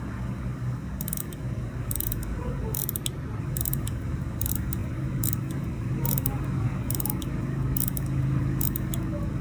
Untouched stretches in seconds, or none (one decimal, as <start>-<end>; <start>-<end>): 2.8-3.4